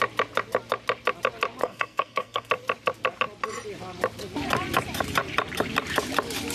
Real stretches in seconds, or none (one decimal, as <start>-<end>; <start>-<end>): 0.0-1.6; 2.5-6.5